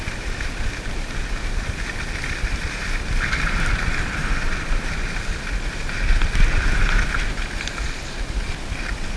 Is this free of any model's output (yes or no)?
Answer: no